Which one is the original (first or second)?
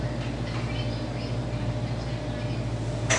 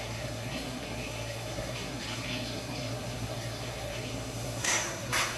first